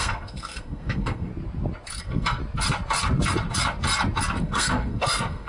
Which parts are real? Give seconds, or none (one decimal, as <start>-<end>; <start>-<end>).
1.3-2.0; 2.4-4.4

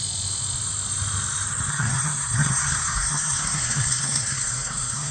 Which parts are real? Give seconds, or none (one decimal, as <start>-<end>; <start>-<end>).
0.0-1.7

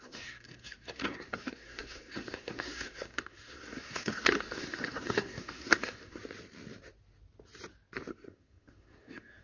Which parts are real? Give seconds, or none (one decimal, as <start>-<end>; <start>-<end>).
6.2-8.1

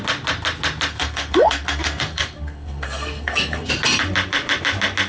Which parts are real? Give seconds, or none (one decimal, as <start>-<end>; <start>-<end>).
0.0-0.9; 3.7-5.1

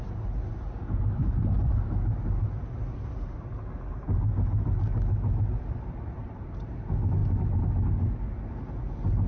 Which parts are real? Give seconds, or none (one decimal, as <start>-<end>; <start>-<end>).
0.0-9.3

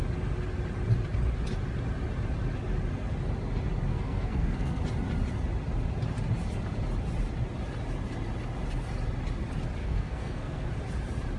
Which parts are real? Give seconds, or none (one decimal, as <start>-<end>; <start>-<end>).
0.0-3.9; 4.8-9.8; 10.7-11.4

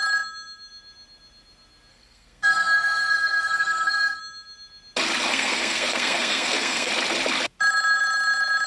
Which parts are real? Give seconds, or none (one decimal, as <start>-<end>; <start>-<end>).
0.0-1.9; 4.2-5.3; 6.9-8.7